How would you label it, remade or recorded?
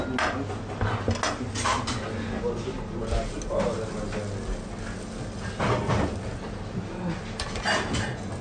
recorded